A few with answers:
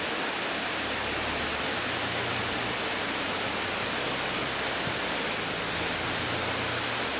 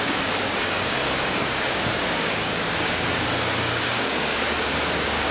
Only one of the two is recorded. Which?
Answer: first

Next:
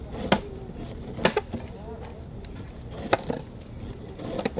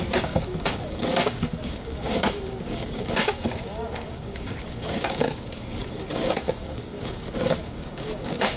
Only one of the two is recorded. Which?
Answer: first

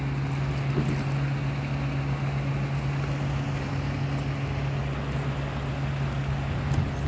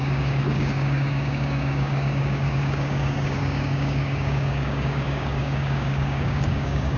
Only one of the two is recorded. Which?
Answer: first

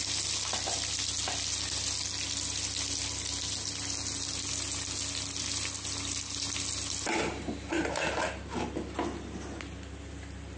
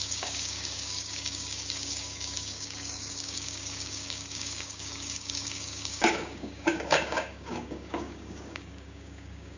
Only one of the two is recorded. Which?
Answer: first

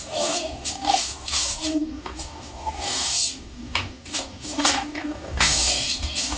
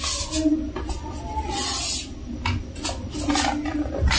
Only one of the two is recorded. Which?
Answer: second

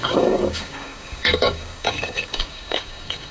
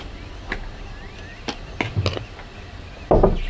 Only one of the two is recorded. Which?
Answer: second